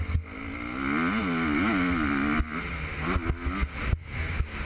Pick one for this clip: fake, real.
real